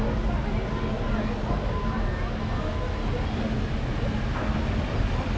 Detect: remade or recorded recorded